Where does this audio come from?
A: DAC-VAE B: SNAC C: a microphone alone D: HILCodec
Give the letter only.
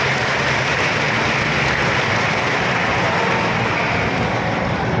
C